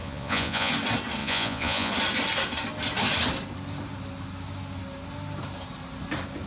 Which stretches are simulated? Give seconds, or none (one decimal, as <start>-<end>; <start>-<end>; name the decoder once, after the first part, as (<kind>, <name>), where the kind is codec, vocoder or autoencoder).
0.0-0.7 (vocoder, Vocos); 1.2-1.9